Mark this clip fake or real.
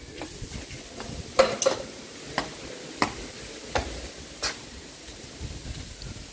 real